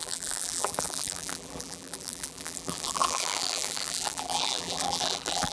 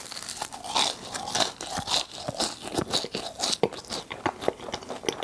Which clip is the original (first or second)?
second